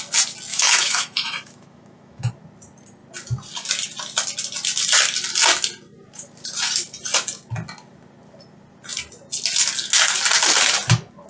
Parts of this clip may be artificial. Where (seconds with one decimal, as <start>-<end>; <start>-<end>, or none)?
0.5-2.3